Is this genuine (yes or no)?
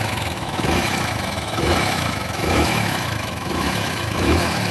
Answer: no